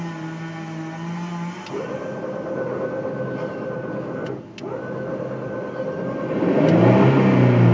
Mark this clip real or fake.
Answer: real